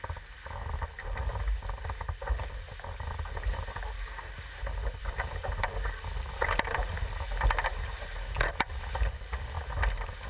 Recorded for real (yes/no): yes